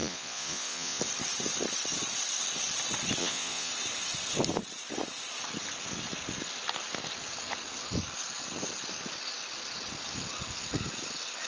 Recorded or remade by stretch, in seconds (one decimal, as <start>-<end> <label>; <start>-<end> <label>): 0.0-1.0 remade; 1.0-3.2 recorded; 3.2-3.7 remade; 3.7-11.5 recorded